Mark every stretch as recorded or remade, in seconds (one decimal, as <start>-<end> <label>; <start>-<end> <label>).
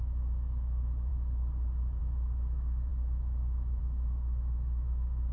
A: 0.0-1.1 remade; 1.1-2.0 recorded; 2.0-5.3 remade